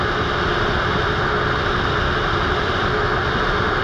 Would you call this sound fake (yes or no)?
no